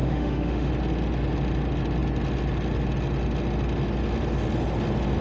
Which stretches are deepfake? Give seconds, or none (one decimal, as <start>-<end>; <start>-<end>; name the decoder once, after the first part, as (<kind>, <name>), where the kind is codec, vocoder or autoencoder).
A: 0.0-0.7 (autoencoder, DAC-VAE)